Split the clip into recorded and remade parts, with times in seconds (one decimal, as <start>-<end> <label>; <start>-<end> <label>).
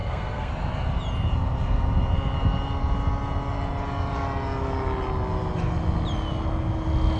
0.0-0.5 remade; 0.5-7.2 recorded